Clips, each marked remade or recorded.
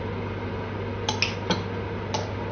recorded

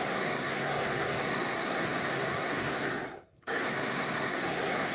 remade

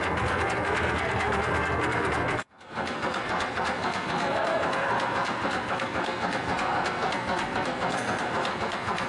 remade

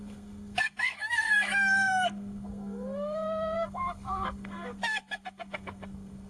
remade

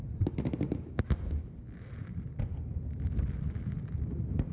recorded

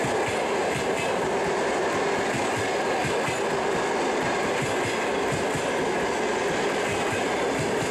recorded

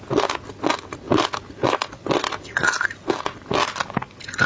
recorded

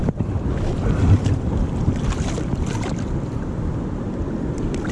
recorded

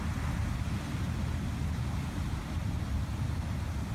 recorded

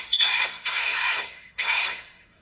remade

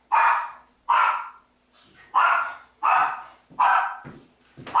recorded